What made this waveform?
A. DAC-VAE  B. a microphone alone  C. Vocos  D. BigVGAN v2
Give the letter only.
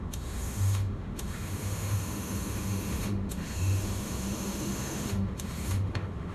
A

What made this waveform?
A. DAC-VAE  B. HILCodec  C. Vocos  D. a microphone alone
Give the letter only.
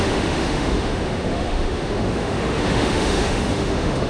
A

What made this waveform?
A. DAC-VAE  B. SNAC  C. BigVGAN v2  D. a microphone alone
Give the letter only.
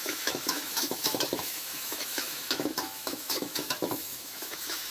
A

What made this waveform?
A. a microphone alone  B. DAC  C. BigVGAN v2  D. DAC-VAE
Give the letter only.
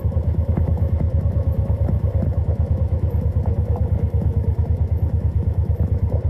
D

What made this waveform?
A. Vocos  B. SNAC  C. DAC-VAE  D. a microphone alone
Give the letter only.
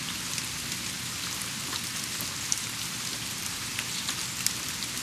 D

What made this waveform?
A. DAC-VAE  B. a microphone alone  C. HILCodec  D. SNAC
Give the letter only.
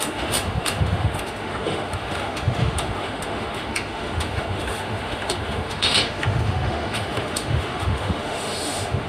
A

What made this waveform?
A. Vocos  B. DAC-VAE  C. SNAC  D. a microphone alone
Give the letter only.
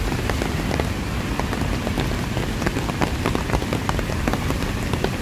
D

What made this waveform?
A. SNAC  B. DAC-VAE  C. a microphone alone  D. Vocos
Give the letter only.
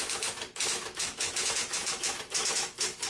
B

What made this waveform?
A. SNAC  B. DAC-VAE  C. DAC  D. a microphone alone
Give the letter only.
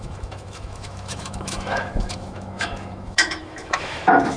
B